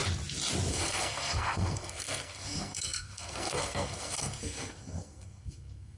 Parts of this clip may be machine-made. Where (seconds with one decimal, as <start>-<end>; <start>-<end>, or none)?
0.7-6.0

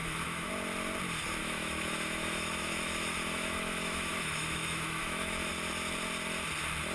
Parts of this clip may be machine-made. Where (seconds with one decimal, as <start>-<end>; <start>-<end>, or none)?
0.0-0.5; 1.4-5.5

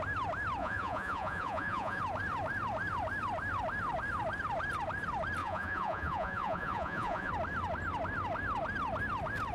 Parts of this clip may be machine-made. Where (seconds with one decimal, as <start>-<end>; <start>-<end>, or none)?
0.6-2.0; 5.4-7.3

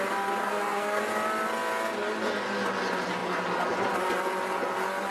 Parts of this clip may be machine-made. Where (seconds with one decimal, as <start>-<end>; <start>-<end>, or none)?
0.4-1.0

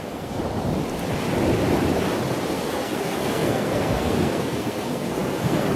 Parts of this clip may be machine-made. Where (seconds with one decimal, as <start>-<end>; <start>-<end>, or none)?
0.0-0.4; 2.5-5.8

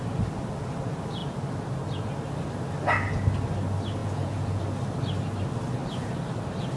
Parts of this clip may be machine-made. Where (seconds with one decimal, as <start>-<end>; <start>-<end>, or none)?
4.0-4.6

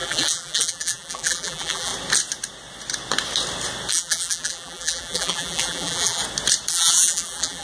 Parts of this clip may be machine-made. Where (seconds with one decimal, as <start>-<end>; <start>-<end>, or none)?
0.0-1.9; 3.9-6.2; 6.7-7.6